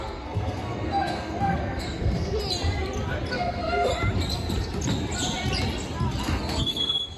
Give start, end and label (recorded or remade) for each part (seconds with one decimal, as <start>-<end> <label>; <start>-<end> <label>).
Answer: 0.0-2.4 remade; 2.4-3.3 recorded; 3.3-3.9 remade; 3.9-6.2 recorded; 6.2-7.2 remade